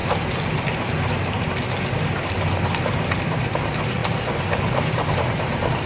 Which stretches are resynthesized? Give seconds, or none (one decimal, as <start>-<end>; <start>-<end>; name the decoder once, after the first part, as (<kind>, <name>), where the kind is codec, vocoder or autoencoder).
3.2-5.9 (vocoder, BigVGAN v2)